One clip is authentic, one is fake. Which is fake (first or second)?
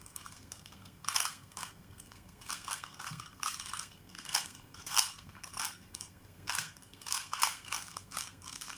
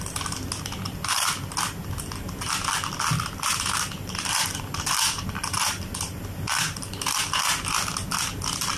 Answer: first